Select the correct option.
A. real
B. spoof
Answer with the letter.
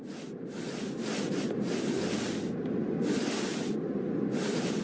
A